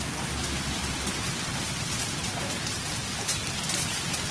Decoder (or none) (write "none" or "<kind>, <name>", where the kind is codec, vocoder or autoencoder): none